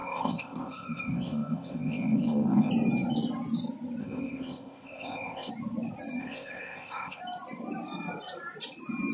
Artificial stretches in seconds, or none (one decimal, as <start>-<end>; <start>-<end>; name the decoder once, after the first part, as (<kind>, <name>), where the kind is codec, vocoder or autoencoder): 0.0-2.7 (codec, ZipCodec); 4.0-5.5; 6.2-7.2